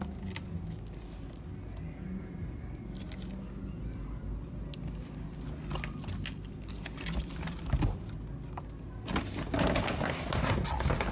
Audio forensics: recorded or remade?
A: recorded